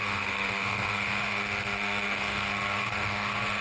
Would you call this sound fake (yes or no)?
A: yes